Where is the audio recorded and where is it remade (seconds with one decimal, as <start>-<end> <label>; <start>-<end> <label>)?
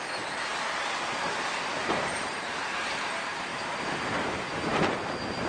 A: 0.0-1.8 recorded; 1.8-2.5 remade; 2.5-3.5 recorded; 3.5-4.8 remade; 4.8-5.5 recorded